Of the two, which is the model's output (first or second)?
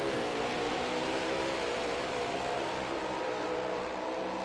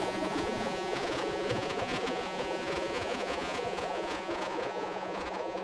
second